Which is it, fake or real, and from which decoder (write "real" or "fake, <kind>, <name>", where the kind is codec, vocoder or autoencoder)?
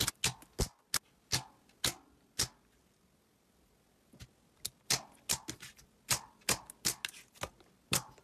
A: real